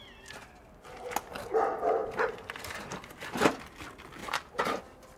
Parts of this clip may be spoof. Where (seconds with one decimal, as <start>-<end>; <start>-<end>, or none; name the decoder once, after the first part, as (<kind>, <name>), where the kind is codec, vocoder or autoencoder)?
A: 2.0-3.5 (vocoder, BigVGAN v2); 4.2-4.8